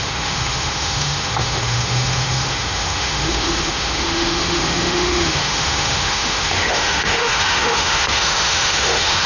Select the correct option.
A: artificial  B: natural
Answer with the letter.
A